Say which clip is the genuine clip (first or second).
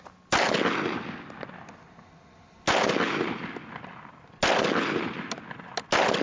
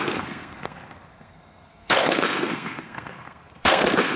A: first